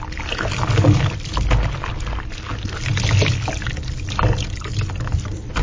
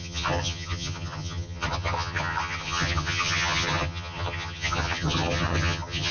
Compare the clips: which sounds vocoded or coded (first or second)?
second